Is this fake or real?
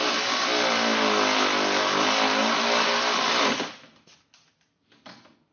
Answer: real